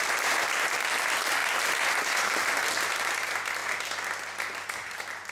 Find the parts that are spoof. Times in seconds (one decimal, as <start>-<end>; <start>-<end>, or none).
none